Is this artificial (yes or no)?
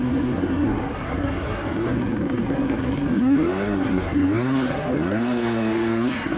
yes